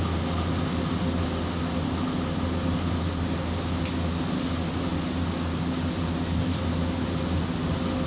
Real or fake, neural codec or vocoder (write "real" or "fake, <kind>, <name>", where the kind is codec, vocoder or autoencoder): real